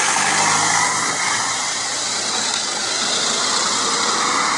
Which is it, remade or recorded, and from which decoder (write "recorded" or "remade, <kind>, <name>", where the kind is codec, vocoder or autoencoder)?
recorded